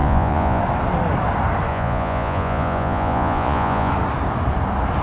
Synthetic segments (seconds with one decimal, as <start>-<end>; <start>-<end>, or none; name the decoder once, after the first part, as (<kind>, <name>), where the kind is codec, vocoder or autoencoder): 0.0-0.6 (vocoder, Vocos); 1.7-3.9